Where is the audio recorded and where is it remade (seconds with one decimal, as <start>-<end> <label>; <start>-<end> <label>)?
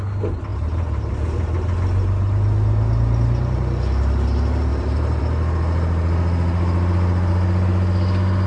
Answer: 0.0-4.7 recorded; 4.7-5.2 remade; 5.2-8.5 recorded